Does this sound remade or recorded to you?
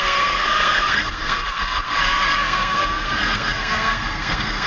remade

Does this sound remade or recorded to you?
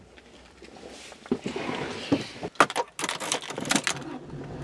recorded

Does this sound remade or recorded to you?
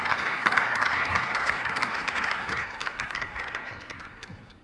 remade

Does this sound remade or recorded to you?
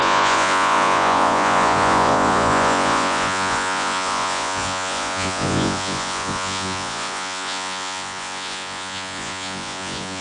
remade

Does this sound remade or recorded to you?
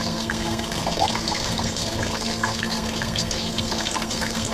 remade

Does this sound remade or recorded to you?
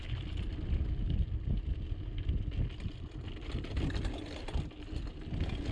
recorded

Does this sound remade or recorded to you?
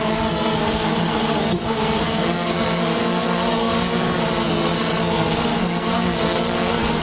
remade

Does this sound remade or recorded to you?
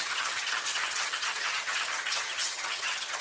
remade